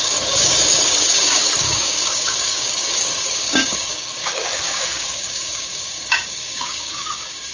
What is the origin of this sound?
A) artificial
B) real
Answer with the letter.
A